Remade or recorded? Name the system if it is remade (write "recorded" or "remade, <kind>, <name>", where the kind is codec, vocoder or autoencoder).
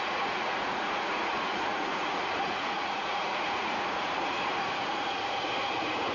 remade, vocoder, Vocos